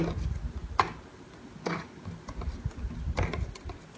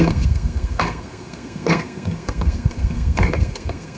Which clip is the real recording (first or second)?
first